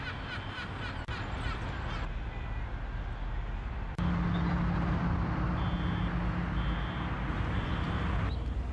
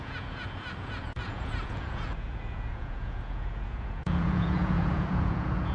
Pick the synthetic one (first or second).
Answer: second